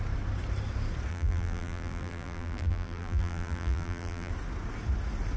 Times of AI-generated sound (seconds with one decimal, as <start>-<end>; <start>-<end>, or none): 1.1-4.3